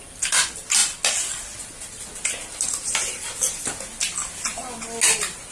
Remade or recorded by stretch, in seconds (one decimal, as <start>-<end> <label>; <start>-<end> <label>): 0.0-5.5 recorded